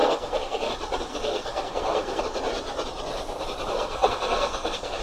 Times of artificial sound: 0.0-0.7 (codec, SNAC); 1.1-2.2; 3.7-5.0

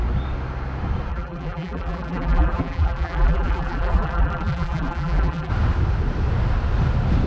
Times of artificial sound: 1.1-5.5 (vocoder, BigVGAN v2)

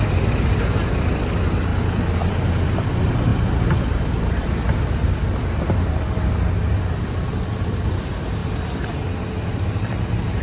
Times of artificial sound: 0.0-1.7 (vocoder, BigVGAN v2); 2.3-10.4